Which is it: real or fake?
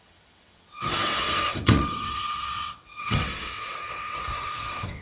fake